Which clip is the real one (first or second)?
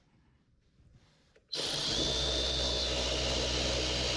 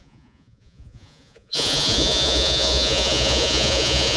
first